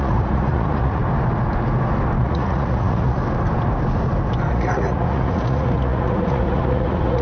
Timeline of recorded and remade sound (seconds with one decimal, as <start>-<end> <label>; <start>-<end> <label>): 0.0-1.0 remade; 1.0-2.2 recorded; 2.2-3.2 remade; 3.2-4.5 recorded; 4.5-7.2 remade